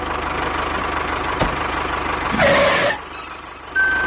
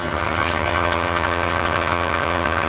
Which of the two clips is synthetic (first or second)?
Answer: second